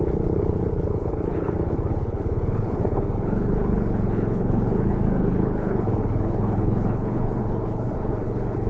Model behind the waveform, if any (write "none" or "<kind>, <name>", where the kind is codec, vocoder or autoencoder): codec, HILCodec